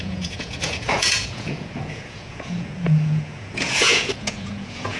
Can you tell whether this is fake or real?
fake